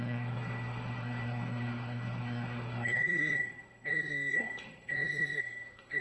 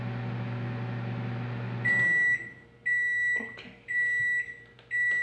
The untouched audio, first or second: second